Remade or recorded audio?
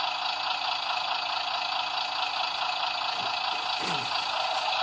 recorded